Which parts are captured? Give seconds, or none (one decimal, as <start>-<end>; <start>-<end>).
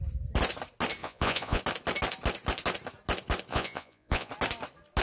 0.0-1.0; 1.6-3.5; 4.3-5.0